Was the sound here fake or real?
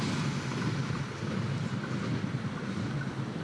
real